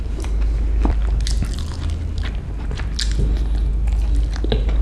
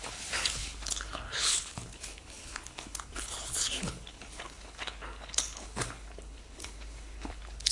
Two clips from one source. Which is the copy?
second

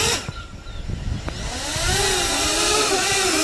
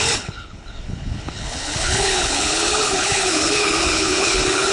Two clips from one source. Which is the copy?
second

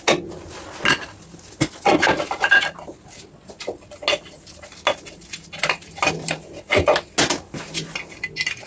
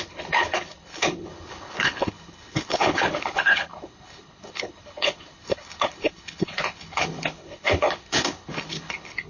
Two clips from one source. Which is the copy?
second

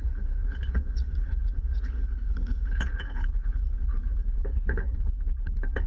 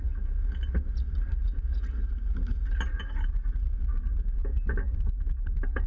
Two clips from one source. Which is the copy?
first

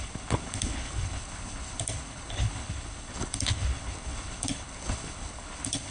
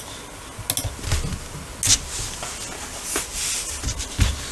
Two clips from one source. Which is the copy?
first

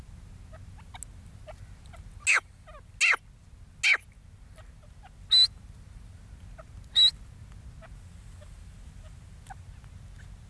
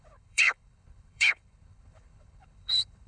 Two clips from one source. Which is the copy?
second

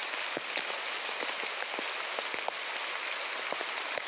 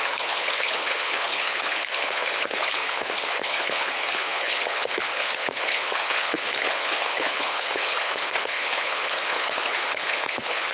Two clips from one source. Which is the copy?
second